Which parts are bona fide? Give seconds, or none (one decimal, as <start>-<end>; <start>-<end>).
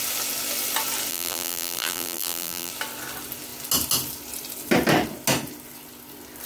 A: 0.0-1.1; 2.7-6.5